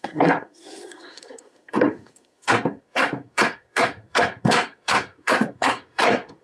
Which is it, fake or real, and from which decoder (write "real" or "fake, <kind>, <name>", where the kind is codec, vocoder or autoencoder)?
fake, codec, SNAC